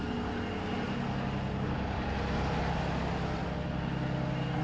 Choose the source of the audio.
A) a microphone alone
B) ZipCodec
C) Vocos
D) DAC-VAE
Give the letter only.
A